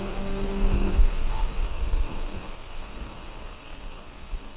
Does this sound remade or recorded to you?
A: remade